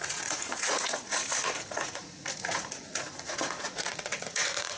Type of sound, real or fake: fake